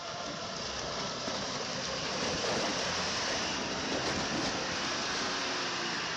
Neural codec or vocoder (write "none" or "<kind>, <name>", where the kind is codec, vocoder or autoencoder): none